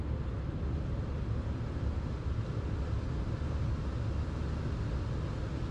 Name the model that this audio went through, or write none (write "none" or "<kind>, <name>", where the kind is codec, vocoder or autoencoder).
none